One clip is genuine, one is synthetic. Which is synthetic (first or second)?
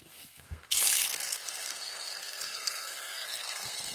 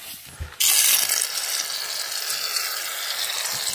first